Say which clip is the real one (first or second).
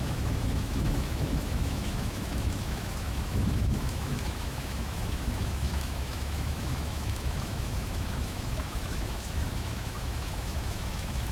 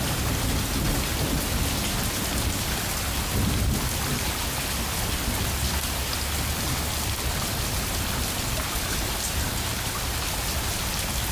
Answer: second